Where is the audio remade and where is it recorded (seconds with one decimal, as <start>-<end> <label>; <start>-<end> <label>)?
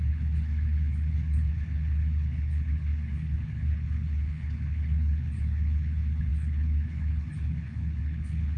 0.0-8.6 remade